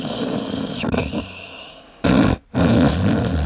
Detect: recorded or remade recorded